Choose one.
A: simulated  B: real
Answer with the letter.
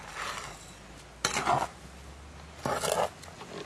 B